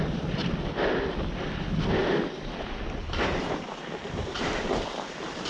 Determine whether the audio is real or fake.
real